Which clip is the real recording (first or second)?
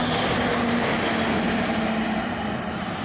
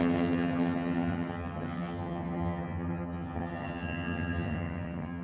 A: first